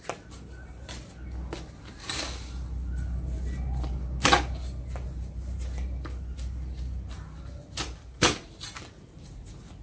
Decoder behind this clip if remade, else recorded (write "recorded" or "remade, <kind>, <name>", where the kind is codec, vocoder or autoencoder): recorded